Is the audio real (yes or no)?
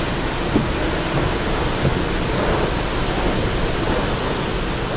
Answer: yes